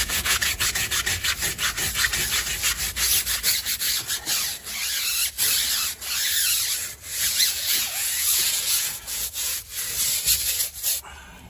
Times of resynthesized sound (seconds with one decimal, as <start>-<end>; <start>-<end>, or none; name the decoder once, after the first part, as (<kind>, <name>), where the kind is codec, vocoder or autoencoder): 0.0-0.9 (vocoder, Vocos); 7.1-9.6